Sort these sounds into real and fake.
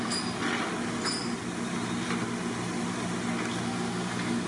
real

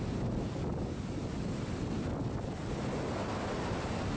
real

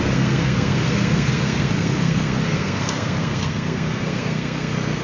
fake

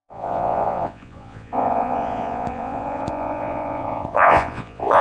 fake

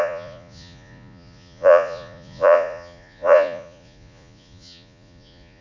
fake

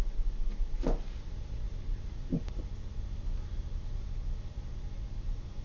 real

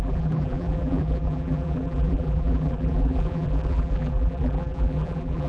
fake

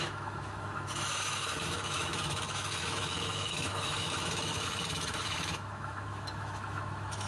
fake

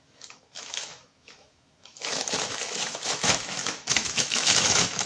fake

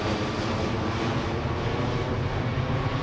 real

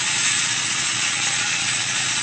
fake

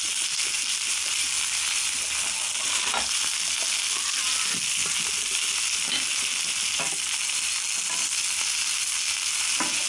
real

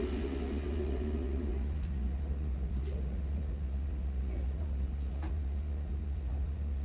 fake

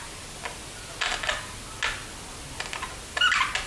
real